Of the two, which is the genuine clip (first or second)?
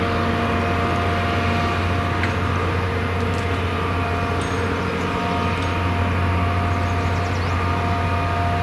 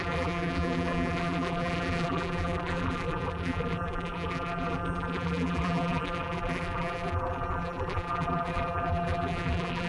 first